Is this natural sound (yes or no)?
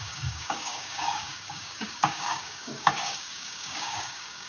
no